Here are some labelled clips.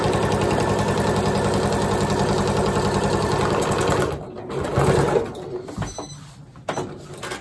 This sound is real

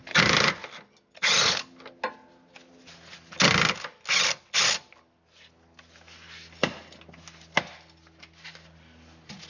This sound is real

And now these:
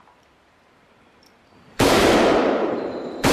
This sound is fake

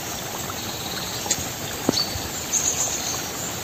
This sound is real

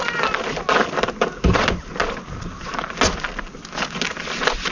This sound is real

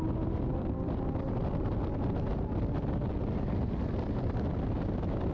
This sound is real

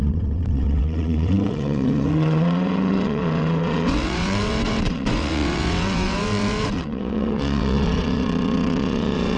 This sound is fake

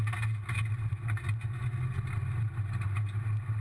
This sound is real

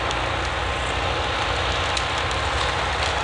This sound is real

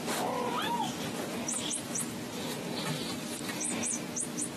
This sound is real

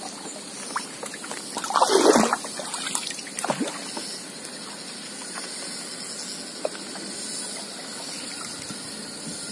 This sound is real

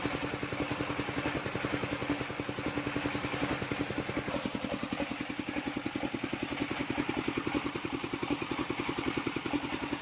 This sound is real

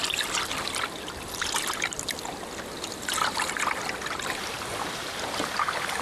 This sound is real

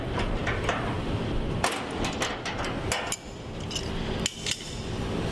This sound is real